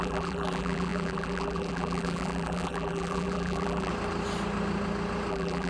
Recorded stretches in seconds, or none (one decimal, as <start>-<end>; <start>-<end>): 3.9-5.3